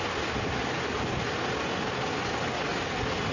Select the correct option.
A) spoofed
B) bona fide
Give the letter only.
B